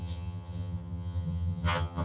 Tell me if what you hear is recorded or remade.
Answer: remade